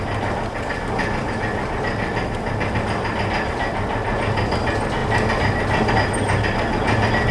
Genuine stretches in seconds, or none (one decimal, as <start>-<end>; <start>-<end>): 0.0-7.3

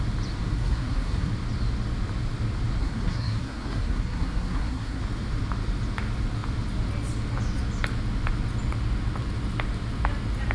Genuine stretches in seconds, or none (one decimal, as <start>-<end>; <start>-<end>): 0.0-0.5; 1.3-2.8; 5.0-10.5

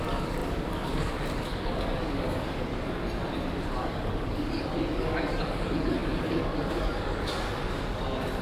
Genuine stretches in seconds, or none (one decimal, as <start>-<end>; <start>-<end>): 2.7-3.7

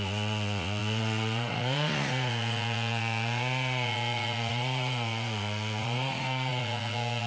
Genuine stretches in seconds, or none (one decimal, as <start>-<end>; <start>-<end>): none

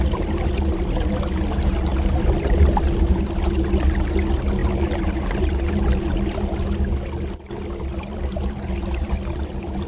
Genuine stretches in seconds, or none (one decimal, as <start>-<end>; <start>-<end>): 0.0-9.9